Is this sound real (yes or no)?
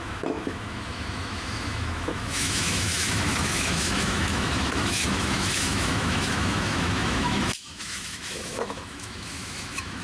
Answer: no